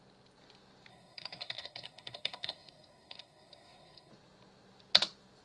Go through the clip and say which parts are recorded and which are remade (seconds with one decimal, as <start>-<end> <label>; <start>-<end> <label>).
0.0-0.9 recorded; 0.9-4.1 remade; 4.1-5.4 recorded